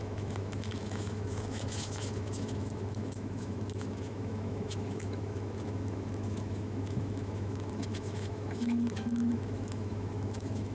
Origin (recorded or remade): remade